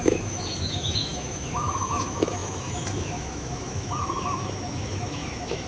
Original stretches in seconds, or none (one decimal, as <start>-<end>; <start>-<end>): none